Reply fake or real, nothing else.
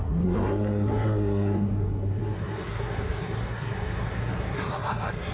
fake